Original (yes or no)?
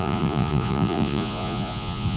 no